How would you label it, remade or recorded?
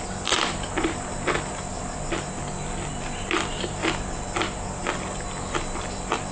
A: recorded